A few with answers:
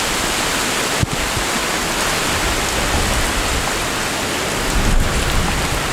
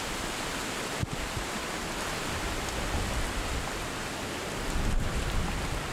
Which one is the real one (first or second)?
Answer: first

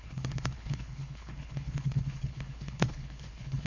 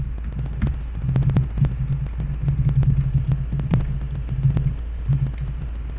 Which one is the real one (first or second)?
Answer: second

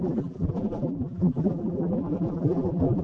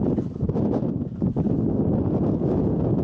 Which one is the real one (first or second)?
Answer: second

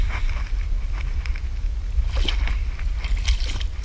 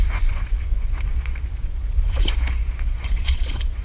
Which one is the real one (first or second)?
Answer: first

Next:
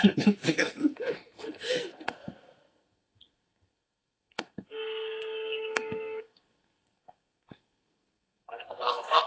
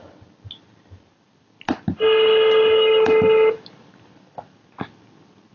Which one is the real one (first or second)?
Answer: second